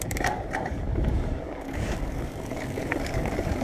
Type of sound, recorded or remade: remade